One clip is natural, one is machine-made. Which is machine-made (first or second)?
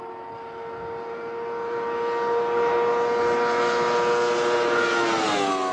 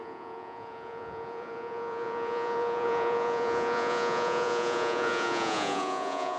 second